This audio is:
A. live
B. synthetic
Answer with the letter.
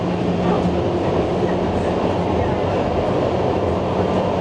A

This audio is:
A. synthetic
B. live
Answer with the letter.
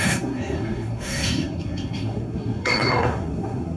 A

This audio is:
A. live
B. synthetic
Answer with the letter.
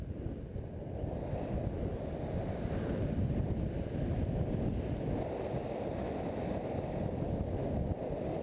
A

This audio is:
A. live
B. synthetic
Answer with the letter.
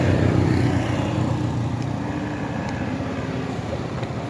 A